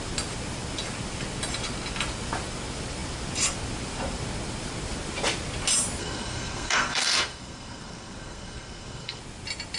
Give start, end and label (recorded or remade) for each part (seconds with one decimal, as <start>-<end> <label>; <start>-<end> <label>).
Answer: 0.0-6.0 recorded; 6.0-9.2 remade; 9.2-9.8 recorded